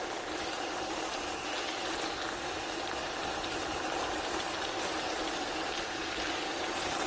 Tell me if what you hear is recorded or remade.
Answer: remade